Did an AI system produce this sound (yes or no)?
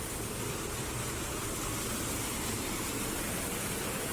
no